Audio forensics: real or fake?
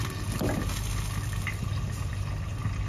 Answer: real